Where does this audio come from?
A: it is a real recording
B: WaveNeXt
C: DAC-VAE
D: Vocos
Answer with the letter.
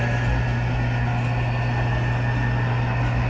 A